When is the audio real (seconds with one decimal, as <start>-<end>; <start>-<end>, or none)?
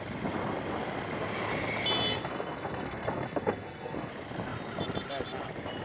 0.0-2.2; 4.1-5.8